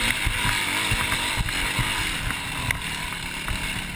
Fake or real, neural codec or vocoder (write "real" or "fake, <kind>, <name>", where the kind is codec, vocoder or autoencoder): real